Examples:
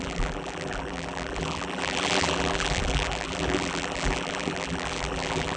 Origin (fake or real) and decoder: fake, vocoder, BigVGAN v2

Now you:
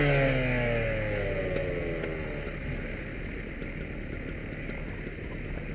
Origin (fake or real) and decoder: real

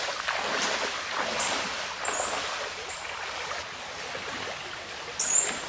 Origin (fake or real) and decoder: real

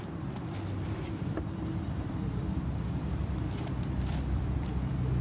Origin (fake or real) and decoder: fake, vocoder, BigVGAN v2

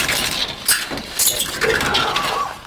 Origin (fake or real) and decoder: real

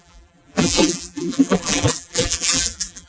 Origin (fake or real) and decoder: fake, vocoder, BigVGAN v2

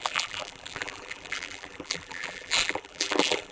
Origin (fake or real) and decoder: fake, vocoder, BigVGAN v2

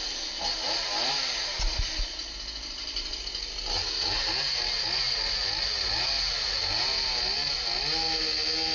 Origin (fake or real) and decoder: real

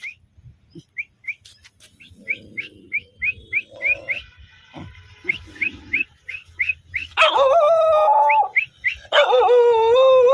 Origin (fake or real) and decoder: real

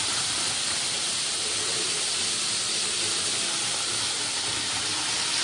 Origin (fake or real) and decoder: real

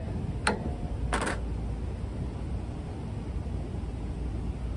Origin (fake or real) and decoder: real